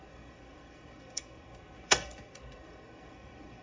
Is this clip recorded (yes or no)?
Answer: no